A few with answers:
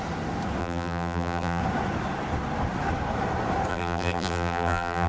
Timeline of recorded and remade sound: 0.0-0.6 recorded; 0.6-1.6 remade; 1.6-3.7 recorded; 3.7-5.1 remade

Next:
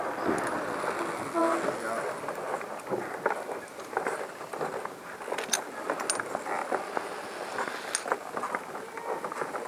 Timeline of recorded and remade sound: 0.0-9.7 recorded

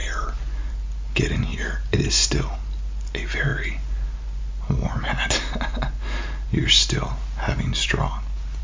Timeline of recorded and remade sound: 0.0-0.7 remade; 0.7-1.5 recorded; 1.5-2.1 remade; 2.1-8.6 recorded

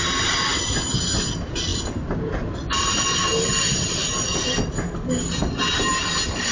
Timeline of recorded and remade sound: 0.0-6.5 recorded

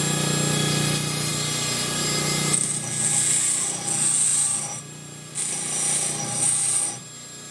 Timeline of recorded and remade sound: 0.0-4.3 recorded; 4.3-5.3 remade; 5.3-7.5 recorded

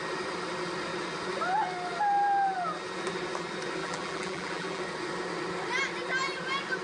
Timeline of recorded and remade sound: 0.0-3.8 recorded; 3.8-4.8 remade; 4.8-6.8 recorded

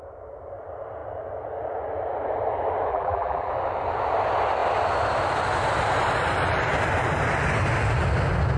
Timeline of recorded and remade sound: 0.0-2.9 recorded; 2.9-3.5 remade; 3.5-8.6 recorded

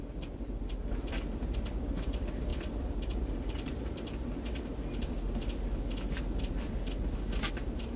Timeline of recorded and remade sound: 0.0-8.0 remade